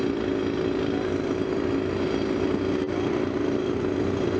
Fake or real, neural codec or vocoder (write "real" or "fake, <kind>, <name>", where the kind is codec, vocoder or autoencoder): real